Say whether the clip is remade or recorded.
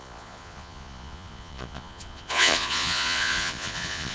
remade